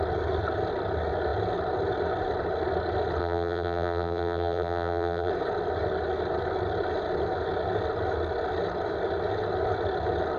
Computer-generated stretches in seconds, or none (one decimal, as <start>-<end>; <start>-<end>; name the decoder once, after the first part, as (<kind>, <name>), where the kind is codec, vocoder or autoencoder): 3.2-5.3 (vocoder, BigVGAN v2)